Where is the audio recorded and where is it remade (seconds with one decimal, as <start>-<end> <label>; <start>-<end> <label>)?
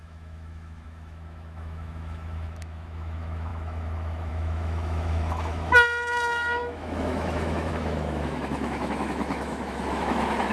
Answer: 0.0-10.5 remade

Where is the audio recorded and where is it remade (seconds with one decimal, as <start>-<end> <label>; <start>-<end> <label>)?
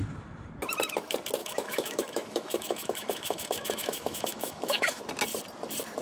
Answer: 0.0-1.4 recorded; 1.4-5.0 remade; 5.0-6.0 recorded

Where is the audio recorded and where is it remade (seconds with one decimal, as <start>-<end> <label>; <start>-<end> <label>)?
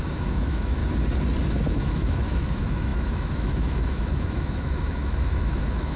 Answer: 0.0-0.8 remade; 0.8-1.7 recorded; 1.7-6.0 remade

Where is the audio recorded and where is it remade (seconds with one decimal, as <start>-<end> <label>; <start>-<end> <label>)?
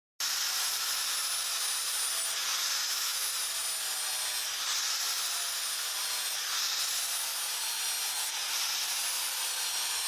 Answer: 0.0-2.8 recorded; 2.8-3.3 remade; 3.3-10.1 recorded